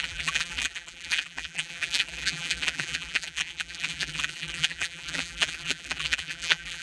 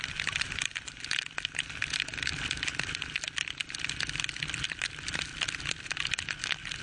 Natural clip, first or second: second